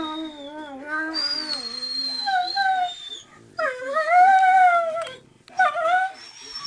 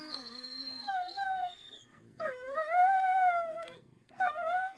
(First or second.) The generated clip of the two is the second